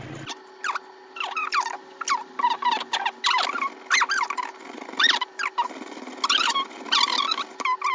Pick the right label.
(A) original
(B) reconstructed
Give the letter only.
A